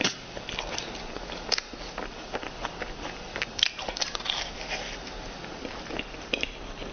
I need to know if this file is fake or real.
real